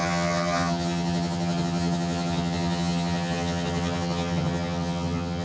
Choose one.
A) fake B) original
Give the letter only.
A